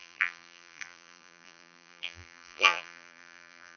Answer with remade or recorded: remade